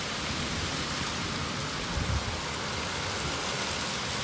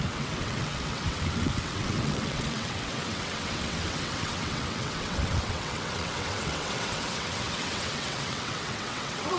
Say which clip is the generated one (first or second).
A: second